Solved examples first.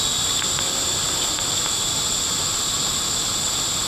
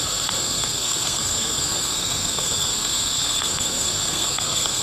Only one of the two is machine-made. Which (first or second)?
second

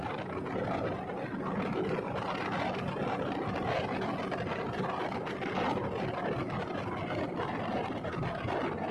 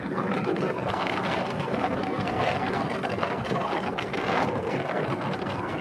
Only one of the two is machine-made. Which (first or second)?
second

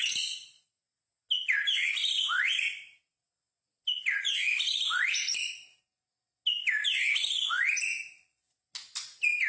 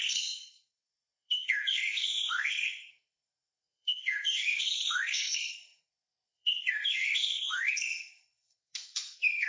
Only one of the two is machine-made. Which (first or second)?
second